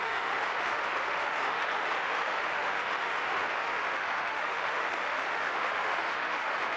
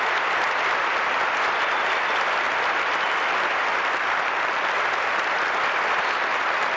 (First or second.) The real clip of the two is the second